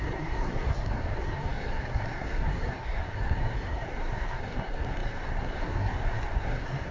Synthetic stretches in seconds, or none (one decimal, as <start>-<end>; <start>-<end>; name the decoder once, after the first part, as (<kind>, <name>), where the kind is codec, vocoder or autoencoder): 0.0-6.9 (codec, SNAC)